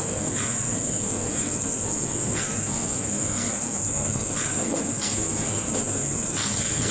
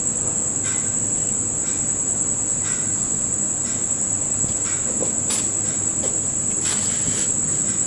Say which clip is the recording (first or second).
second